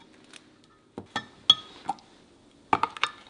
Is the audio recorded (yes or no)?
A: yes